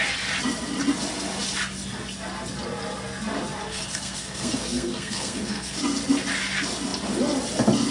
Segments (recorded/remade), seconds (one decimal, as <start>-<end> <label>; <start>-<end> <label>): 0.0-3.7 recorded; 3.7-5.8 remade; 5.8-7.9 recorded